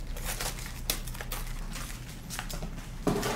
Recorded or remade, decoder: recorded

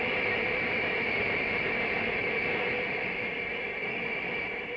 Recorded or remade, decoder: remade, vocoder, BigVGAN v2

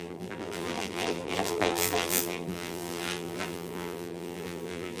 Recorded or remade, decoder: remade, vocoder, BigVGAN v2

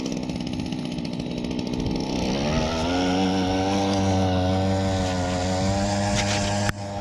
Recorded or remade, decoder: recorded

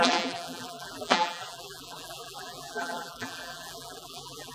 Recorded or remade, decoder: remade, vocoder, BigVGAN v2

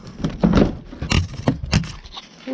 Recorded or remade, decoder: recorded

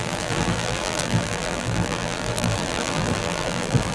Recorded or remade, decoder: remade, vocoder, BigVGAN v2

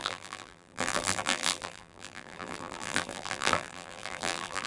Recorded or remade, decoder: remade, vocoder, BigVGAN v2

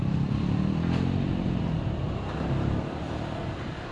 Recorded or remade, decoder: remade, vocoder, BigVGAN v2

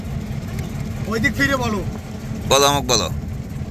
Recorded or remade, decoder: recorded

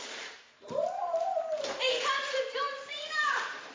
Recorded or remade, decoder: remade, vocoder, BigVGAN v2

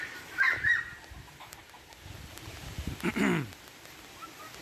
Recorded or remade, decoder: recorded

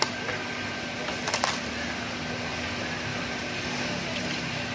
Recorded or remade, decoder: remade, vocoder, BigVGAN v2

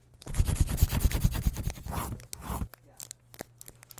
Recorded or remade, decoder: recorded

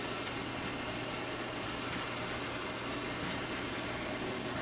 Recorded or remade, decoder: recorded